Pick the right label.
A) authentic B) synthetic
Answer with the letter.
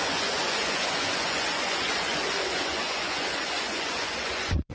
B